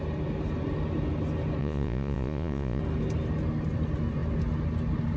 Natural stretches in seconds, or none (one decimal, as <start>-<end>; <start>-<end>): 0.0-1.6; 2.8-5.2